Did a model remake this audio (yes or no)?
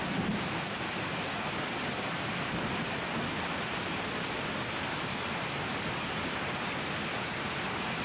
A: no